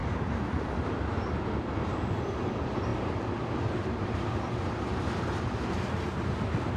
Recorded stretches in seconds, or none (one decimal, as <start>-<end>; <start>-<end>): 0.5-2.9; 4.3-6.8